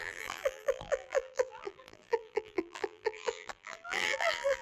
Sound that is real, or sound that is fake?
fake